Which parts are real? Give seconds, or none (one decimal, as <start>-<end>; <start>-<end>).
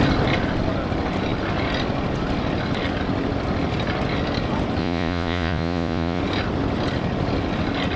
0.0-4.8; 6.2-8.0